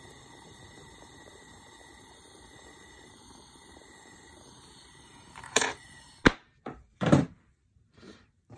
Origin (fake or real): fake